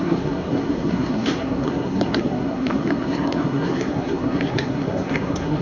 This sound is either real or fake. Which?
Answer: fake